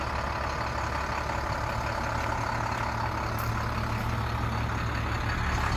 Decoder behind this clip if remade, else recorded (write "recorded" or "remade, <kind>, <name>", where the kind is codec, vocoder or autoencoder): recorded